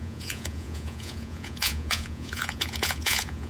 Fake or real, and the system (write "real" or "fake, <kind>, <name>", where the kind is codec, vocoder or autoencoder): fake, vocoder, Vocos